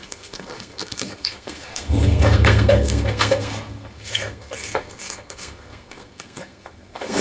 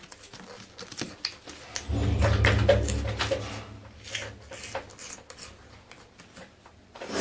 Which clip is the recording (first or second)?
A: second